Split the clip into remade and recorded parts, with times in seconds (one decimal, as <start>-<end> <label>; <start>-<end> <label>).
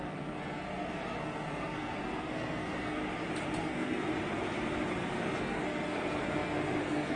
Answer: 0.0-3.0 remade; 3.0-3.6 recorded; 3.6-4.1 remade; 4.1-4.9 recorded; 4.9-7.2 remade